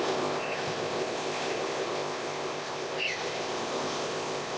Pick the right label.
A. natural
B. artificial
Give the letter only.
B